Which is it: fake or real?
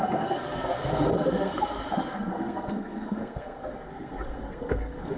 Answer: fake